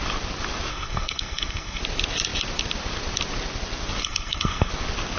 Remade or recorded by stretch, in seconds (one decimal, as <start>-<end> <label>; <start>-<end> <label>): 0.0-0.7 recorded; 0.7-1.8 remade; 1.8-4.0 recorded; 4.0-4.7 remade; 4.7-5.2 recorded